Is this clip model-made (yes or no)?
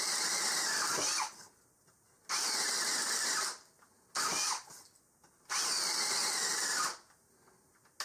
no